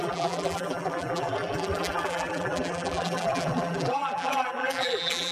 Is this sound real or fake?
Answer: fake